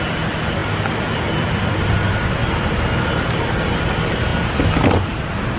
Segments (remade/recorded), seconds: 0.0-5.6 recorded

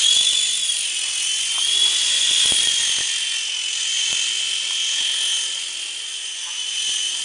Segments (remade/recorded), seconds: 0.0-2.0 recorded; 2.0-2.8 remade; 2.8-3.8 recorded; 3.8-4.7 remade; 4.7-6.1 recorded; 6.1-6.7 remade; 6.7-7.2 recorded

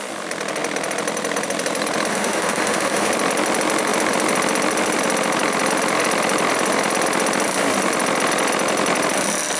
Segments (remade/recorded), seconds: 0.0-2.1 recorded; 2.1-3.1 remade; 3.1-9.6 recorded

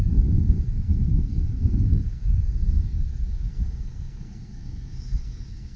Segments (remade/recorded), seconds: 0.0-5.8 remade

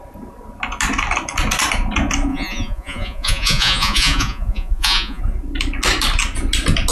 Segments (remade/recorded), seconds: 0.0-2.3 recorded; 2.3-5.2 remade; 5.2-6.9 recorded

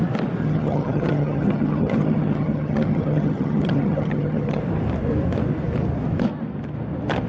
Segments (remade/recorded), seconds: 0.0-0.4 recorded; 0.4-4.6 remade; 4.6-7.3 recorded

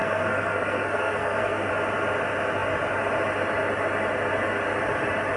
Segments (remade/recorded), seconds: 0.0-1.7 remade; 1.7-5.4 recorded

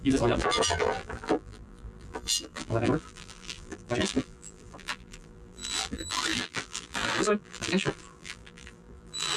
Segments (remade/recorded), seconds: 0.0-9.4 remade